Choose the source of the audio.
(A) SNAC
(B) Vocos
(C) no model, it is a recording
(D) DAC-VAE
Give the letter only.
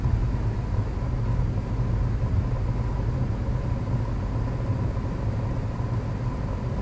C